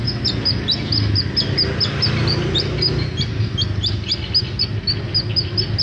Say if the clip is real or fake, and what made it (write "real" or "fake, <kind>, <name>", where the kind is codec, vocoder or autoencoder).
real